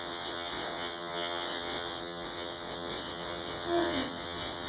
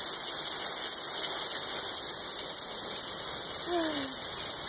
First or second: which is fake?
first